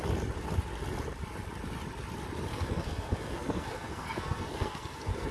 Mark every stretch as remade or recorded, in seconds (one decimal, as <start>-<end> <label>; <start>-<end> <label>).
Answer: 0.0-2.5 recorded; 2.5-5.3 remade